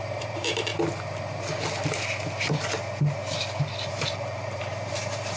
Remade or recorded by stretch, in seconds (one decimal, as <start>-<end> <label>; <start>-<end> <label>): 0.0-0.7 remade; 0.7-3.9 recorded; 3.9-5.4 remade